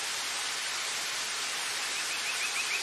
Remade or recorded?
recorded